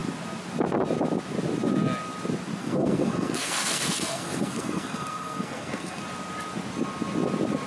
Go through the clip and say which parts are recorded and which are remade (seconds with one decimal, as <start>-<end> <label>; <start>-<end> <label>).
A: 0.0-2.6 recorded; 2.6-6.0 remade; 6.0-7.7 recorded